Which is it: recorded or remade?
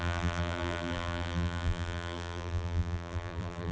remade